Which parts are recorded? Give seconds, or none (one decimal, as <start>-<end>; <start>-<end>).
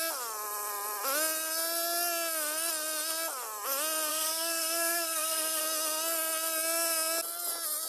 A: 0.0-4.1; 5.6-7.9